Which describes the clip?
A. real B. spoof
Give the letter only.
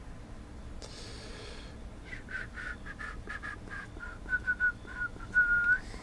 A